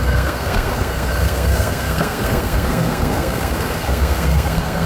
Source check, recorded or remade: remade